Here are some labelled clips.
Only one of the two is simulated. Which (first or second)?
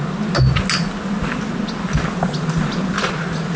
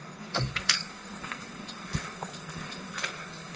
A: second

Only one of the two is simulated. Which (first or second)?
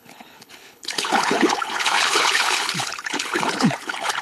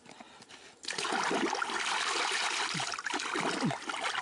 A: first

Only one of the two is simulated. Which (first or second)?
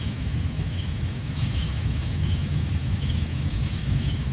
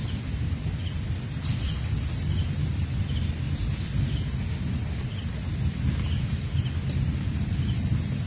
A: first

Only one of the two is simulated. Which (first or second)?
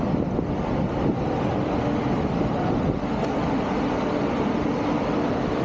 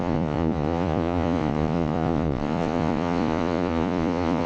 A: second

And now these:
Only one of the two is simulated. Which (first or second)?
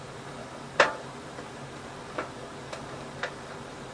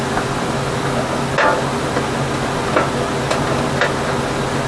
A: first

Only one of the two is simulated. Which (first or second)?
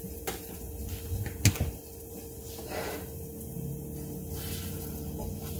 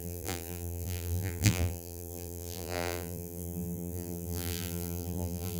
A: second